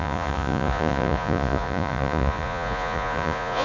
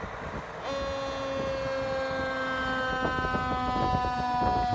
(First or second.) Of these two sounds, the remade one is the first